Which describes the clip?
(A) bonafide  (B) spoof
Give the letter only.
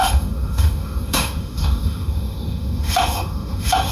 B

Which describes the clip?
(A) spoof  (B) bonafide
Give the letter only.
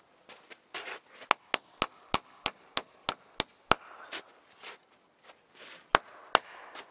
B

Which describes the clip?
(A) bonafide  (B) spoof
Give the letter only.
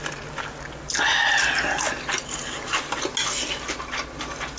A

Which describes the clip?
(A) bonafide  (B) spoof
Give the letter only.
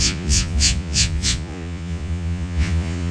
B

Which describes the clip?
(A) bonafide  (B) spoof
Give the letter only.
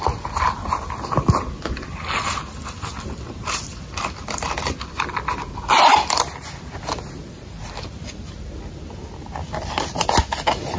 A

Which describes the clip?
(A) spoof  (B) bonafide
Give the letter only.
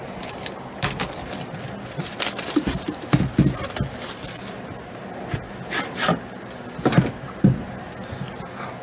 B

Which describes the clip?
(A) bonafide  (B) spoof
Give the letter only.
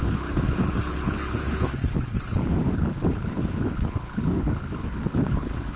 B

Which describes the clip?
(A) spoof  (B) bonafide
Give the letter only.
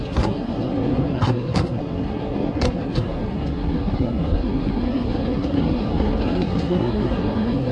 A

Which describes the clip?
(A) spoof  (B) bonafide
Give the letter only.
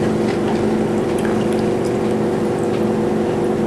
B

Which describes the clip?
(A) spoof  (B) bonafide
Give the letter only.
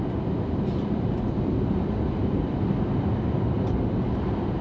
B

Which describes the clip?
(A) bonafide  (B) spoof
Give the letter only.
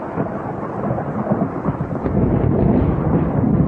B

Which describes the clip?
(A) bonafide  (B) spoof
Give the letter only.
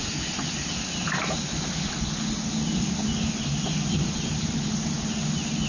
A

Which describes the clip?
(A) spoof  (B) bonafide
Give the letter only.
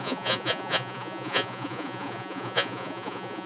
A